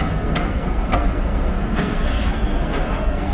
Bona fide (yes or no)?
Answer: no